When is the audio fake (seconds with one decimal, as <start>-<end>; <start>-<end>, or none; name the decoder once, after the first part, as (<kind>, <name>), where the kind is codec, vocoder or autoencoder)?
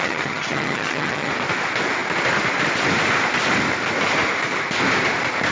0.0-1.3 (vocoder, HiFi-GAN)